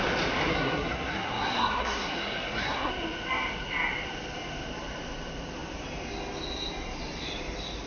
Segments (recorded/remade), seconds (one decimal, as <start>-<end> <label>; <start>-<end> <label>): 0.0-0.5 recorded; 0.5-2.9 remade; 2.9-7.9 recorded